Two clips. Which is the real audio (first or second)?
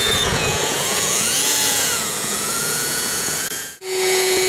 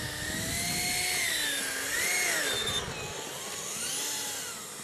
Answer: second